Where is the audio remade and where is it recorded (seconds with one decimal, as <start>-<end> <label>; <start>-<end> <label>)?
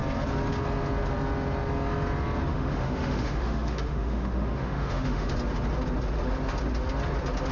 0.0-2.5 recorded; 2.5-5.3 remade; 5.3-7.5 recorded